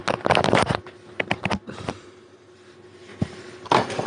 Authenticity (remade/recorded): recorded